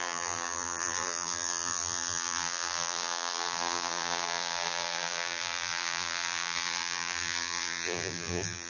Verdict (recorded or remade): remade